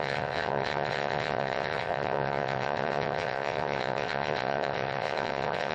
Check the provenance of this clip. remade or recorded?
remade